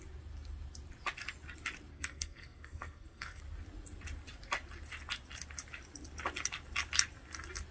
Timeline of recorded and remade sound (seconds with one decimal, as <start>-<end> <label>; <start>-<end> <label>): 0.0-1.9 recorded; 1.9-3.4 remade; 3.4-7.7 recorded